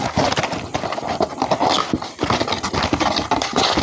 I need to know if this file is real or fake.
real